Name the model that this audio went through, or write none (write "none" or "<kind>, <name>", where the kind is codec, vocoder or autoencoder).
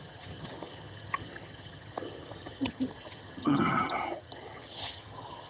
vocoder, HiFi-GAN